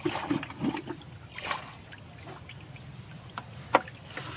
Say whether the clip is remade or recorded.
recorded